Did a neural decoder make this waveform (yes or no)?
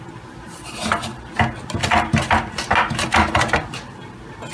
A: no